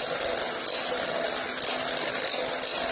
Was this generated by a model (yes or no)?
no